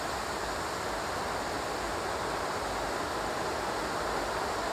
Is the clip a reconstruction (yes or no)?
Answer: no